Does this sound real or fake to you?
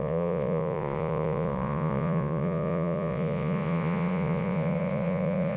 fake